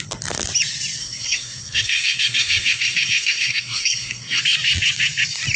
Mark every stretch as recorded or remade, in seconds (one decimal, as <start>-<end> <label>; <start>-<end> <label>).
0.0-1.0 recorded; 1.0-4.4 remade; 4.4-5.6 recorded